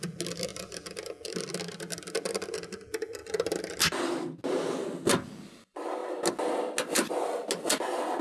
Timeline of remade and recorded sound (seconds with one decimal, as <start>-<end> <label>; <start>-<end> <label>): 0.0-8.2 recorded